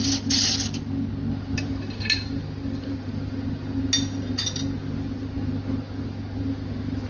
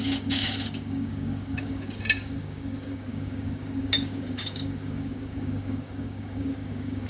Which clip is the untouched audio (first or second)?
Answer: first